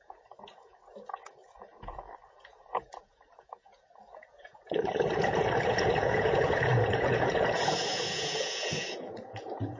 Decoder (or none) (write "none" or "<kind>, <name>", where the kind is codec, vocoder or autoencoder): vocoder, Vocos